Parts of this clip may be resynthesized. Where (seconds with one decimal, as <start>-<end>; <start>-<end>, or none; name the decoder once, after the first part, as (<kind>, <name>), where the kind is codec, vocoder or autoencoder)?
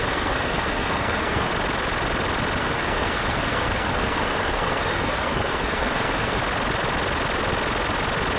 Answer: 0.0-1.5 (codec, SNAC); 2.6-6.4